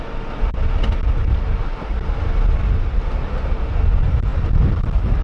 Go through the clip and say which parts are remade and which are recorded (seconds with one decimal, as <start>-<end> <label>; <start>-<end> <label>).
0.0-4.3 recorded; 4.3-5.2 remade